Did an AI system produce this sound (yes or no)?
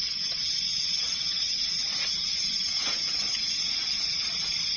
yes